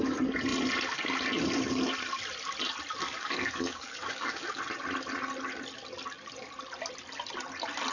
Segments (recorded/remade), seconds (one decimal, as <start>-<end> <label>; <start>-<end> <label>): 0.0-3.0 recorded; 3.0-4.6 remade; 4.6-7.9 recorded